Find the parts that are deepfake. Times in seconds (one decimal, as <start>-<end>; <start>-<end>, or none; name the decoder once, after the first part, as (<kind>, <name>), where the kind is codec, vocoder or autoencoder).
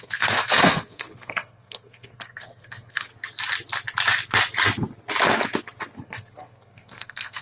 0.0-3.1 (codec, SNAC); 6.0-7.4